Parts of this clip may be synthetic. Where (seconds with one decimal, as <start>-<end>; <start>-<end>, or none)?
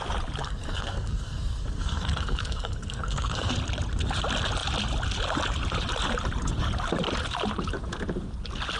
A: 0.4-3.5